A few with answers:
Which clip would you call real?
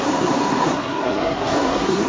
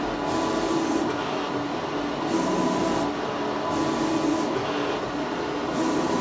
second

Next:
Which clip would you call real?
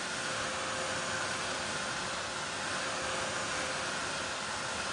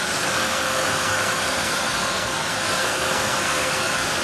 first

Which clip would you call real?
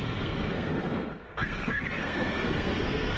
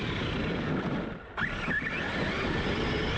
second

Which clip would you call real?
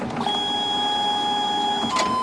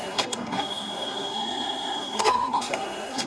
first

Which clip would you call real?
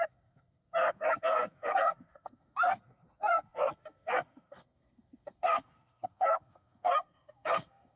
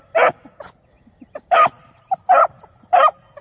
second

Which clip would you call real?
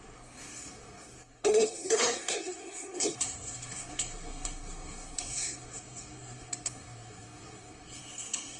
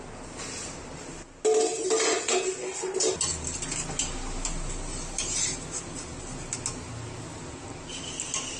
second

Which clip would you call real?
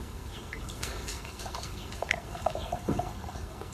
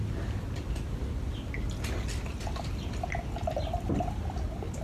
second